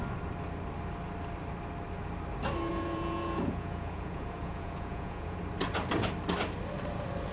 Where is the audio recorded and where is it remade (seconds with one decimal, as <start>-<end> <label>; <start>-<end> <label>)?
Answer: 0.0-2.7 recorded; 2.7-5.4 remade; 5.4-7.3 recorded